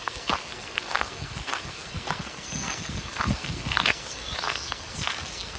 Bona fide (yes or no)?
no